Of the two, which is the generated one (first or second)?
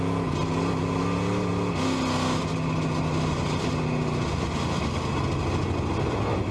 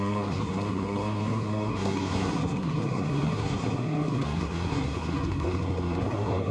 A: second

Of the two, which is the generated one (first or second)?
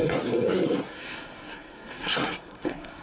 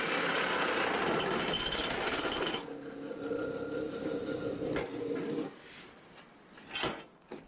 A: first